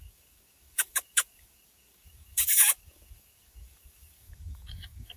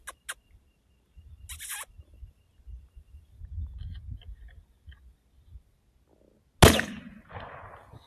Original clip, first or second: second